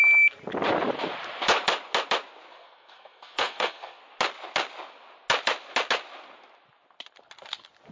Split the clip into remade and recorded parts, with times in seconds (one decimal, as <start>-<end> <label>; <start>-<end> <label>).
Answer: 0.0-2.5 recorded; 2.5-4.0 remade; 4.0-7.9 recorded